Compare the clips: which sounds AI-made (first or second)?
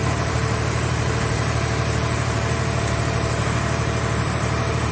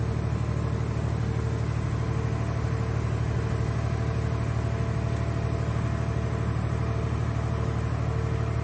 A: first